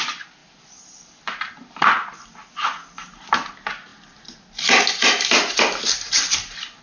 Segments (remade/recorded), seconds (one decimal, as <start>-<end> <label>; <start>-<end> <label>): 0.0-6.8 recorded